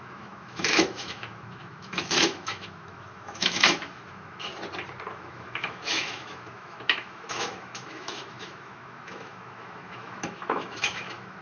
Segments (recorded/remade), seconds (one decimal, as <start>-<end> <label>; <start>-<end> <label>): 0.0-4.5 remade; 4.5-5.1 recorded; 5.1-11.4 remade